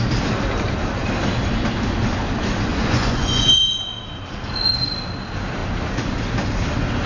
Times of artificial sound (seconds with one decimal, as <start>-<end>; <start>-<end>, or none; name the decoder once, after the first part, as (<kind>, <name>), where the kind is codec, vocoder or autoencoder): 2.7-3.6 (vocoder, Vocos)

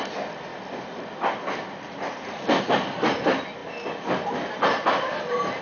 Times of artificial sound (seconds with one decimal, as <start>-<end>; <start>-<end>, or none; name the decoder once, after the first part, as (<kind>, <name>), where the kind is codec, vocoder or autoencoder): none

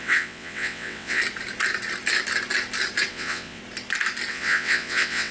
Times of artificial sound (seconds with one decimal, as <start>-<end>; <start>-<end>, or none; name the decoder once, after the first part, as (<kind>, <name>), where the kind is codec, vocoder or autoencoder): 0.0-1.2 (vocoder, WaveNeXt); 3.1-3.6; 4.3-5.3

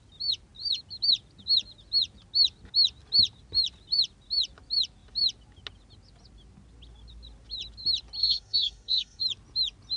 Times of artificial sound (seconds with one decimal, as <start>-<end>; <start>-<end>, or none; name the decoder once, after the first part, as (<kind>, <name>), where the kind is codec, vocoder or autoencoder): 8.2-9.2 (codec, SNAC)